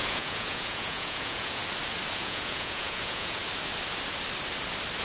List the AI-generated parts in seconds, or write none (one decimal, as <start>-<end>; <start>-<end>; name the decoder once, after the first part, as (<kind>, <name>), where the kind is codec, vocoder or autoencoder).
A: 0.0-1.6 (vocoder, Vocos); 2.1-3.4

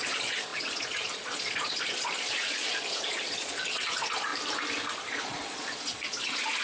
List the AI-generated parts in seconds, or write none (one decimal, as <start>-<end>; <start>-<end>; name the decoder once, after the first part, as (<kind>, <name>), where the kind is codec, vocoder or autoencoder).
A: 0.0-4.3 (vocoder, Vocos); 5.1-6.6

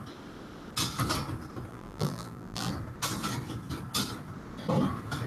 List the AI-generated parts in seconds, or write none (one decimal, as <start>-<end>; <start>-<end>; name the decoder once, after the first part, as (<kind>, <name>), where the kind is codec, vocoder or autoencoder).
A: 1.7-2.7 (vocoder, BigVGAN v2)

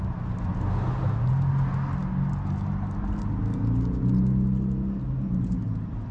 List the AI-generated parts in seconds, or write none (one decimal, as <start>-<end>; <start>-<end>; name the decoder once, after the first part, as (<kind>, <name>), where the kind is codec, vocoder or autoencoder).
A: none